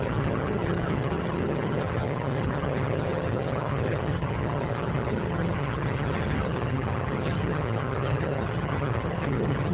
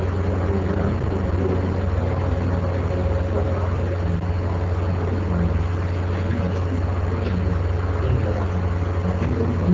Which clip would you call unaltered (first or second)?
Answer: second